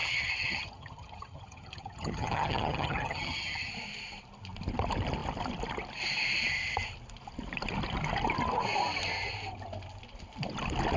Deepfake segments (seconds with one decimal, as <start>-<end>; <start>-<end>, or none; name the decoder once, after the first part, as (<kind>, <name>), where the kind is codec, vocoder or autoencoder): 0.0-3.7 (vocoder, HiFi-GAN)

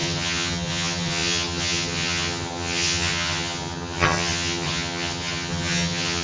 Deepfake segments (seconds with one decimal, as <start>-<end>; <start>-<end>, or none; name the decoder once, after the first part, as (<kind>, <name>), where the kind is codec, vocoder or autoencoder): 0.0-6.2 (vocoder, HiFi-GAN)

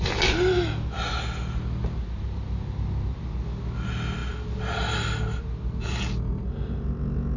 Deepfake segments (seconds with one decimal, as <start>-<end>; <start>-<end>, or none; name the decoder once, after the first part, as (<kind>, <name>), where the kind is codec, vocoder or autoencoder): none

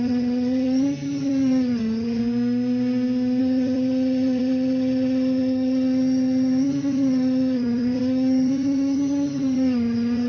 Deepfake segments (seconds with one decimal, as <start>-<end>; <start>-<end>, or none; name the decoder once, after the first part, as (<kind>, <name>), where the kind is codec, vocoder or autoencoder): 0.0-2.2 (vocoder, HiFi-GAN); 3.4-10.3